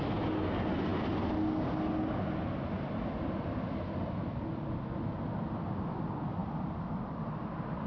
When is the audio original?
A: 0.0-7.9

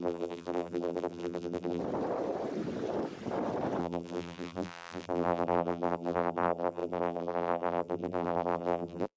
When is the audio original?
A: 1.8-3.8

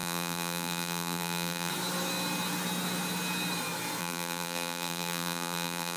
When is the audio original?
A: 1.7-4.0

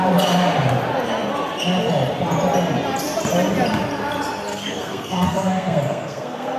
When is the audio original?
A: 0.0-4.5

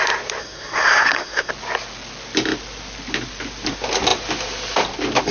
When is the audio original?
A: 0.0-0.4; 1.5-5.3

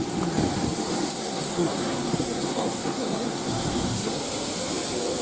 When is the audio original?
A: 0.0-1.1; 4.2-5.2